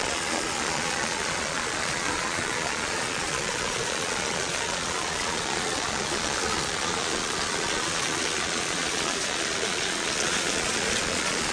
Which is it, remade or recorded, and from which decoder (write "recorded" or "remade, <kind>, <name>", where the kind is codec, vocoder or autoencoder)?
remade, vocoder, Vocos